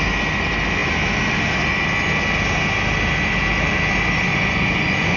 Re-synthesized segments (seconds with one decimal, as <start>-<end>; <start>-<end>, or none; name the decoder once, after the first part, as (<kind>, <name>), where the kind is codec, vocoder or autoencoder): 4.3-5.2 (vocoder, Vocos)